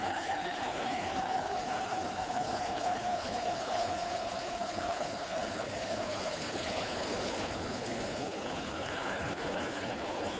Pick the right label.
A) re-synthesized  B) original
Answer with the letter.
A